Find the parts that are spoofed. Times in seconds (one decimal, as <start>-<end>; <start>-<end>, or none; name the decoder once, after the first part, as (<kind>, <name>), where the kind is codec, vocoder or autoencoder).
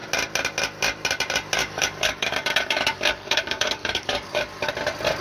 1.6-4.7 (codec, DAC)